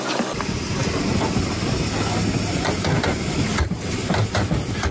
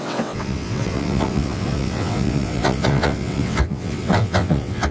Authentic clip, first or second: first